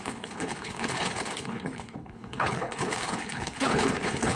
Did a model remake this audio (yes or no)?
yes